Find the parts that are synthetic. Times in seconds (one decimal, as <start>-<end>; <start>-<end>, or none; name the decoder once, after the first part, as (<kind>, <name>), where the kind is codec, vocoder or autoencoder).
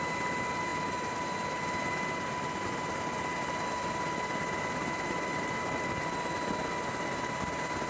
none